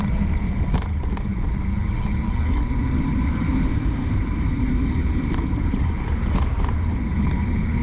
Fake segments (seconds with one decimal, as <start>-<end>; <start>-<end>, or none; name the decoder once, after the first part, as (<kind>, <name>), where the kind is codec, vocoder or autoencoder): 0.0-1.3 (vocoder, BigVGAN v2); 3.0-7.8